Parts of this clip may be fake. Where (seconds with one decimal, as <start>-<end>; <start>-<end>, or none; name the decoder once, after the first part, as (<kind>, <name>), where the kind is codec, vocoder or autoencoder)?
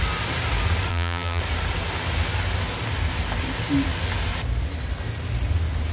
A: 0.9-1.4 (vocoder, BigVGAN v2)